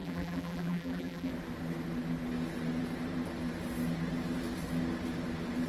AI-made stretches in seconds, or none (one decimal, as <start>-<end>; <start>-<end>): 0.0-1.3